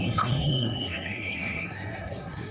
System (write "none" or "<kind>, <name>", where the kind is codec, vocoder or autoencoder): codec, SNAC